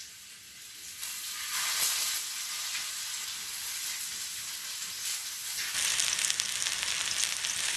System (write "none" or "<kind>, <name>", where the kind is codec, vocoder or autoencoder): none